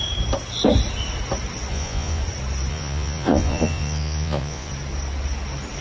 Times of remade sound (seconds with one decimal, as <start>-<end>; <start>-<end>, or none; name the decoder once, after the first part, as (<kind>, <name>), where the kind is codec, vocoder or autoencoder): 1.7-2.2 (vocoder, Vocos); 2.7-4.7